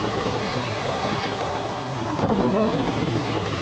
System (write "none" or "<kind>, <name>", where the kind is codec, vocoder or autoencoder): codec, SNAC